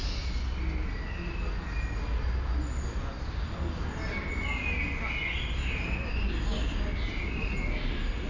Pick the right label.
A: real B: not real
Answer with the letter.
A